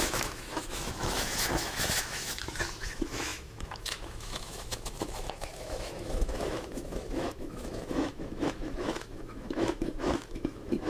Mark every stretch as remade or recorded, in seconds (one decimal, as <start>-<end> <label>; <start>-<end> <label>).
0.0-10.9 remade